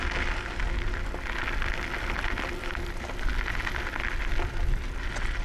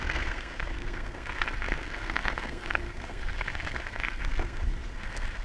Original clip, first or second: first